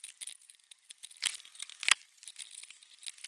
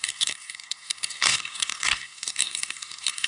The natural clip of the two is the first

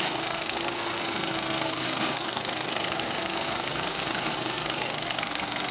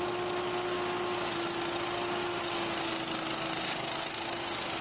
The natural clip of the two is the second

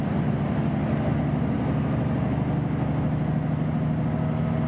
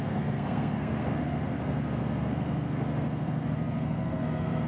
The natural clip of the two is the first